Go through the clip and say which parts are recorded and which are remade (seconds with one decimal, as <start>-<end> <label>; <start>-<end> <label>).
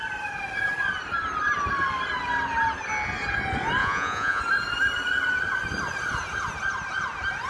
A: 0.0-3.8 recorded; 3.8-4.4 remade; 4.4-7.5 recorded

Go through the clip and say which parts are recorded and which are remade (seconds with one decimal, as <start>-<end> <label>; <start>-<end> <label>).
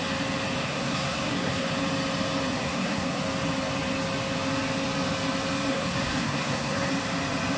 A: 0.0-0.6 recorded; 0.6-1.7 remade; 1.7-2.5 recorded; 2.5-3.2 remade; 3.2-5.7 recorded; 5.7-6.9 remade; 6.9-7.6 recorded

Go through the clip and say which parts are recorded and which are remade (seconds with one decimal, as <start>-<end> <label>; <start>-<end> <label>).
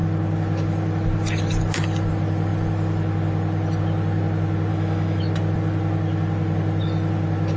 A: 0.0-4.7 recorded; 4.7-5.2 remade; 5.2-7.6 recorded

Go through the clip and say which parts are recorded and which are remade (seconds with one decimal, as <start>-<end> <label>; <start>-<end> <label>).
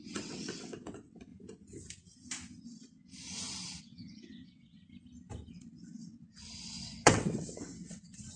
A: 0.0-1.3 remade; 1.3-2.6 recorded; 2.6-3.1 remade; 3.1-3.8 recorded; 3.8-4.8 remade; 4.8-5.5 recorded; 5.5-8.4 remade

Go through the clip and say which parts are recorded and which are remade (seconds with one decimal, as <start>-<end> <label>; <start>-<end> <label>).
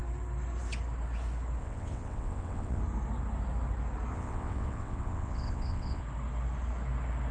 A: 0.0-1.6 recorded; 1.6-2.8 remade; 2.8-4.1 recorded; 4.1-6.0 remade; 6.0-7.3 recorded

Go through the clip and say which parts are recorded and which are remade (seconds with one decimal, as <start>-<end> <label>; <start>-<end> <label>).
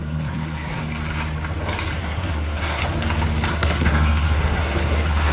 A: 0.0-0.8 remade; 0.8-2.0 recorded; 2.0-2.8 remade; 2.8-3.5 recorded; 3.5-5.3 remade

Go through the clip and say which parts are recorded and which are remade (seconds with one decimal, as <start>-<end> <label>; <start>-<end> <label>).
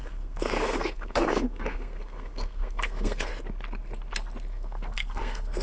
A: 0.0-3.3 remade; 3.3-4.5 recorded; 4.5-5.6 remade